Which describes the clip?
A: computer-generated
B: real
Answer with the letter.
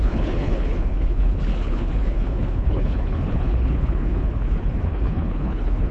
A